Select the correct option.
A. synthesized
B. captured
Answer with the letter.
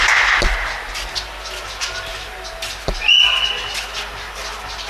B